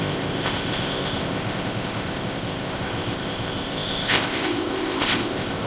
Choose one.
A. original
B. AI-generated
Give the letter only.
B